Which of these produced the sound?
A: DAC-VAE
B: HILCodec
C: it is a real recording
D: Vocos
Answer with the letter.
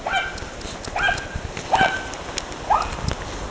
C